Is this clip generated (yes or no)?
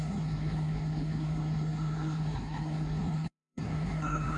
yes